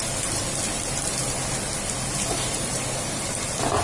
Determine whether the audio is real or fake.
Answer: real